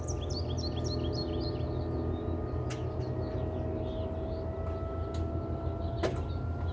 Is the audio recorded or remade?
recorded